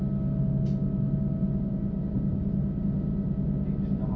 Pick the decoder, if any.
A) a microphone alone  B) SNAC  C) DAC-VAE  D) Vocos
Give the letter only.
A